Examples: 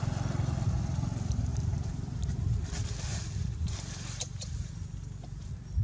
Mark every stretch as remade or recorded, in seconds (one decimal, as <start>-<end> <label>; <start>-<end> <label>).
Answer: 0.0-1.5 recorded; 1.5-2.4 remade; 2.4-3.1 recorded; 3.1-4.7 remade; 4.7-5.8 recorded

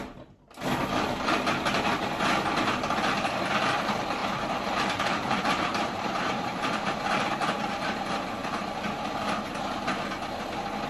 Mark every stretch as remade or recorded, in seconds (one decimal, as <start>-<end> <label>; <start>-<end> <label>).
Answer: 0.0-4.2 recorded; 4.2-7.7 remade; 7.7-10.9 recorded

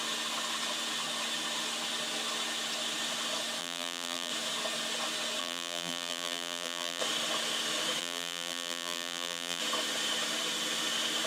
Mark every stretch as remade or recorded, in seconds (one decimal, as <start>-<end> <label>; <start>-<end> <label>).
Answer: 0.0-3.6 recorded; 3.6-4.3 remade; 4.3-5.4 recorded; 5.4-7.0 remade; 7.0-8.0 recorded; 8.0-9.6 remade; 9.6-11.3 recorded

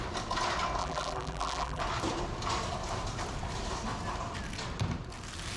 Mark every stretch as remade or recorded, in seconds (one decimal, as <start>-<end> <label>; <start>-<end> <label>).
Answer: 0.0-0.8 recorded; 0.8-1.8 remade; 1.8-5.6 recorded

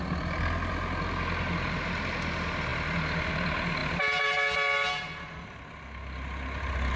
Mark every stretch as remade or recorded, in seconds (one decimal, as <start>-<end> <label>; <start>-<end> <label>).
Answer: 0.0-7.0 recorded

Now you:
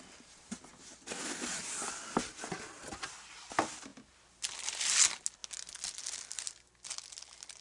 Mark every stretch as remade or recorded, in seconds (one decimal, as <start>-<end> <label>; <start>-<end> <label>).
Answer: 0.0-7.6 recorded